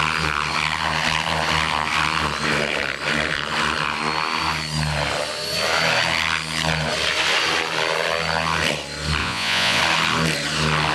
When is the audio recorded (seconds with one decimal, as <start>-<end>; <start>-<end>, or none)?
0.0-9.2; 9.8-10.9